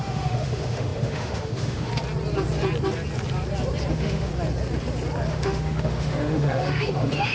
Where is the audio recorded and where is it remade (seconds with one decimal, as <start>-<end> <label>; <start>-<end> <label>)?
0.0-1.9 remade; 1.9-3.9 recorded; 3.9-4.3 remade; 4.3-5.3 recorded; 5.3-7.3 remade